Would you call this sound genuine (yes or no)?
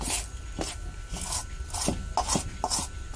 yes